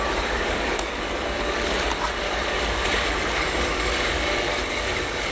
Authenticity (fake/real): fake